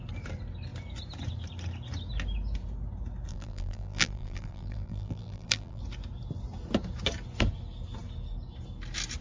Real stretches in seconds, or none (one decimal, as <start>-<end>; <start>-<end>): 0.0-3.3; 5.8-9.2